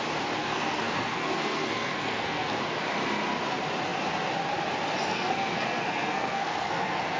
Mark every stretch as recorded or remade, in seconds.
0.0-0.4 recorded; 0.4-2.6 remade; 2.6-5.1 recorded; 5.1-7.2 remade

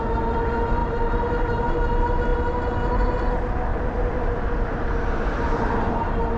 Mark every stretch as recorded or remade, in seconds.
0.0-0.8 recorded; 0.8-1.6 remade; 1.6-3.7 recorded; 3.7-4.9 remade; 4.9-6.4 recorded